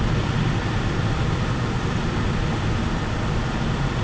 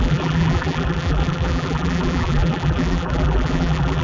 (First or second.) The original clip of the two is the first